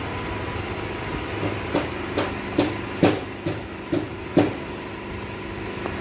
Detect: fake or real real